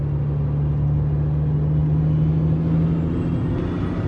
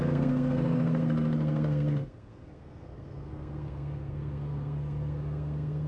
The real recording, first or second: first